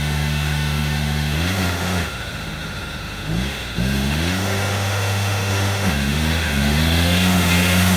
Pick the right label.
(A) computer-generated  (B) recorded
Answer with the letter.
A